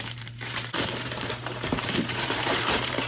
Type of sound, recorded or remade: remade